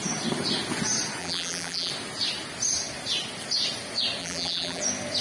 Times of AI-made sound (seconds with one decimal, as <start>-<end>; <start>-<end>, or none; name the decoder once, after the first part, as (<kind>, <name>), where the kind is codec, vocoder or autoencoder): 1.2-1.9 (vocoder, BigVGAN v2); 4.2-4.8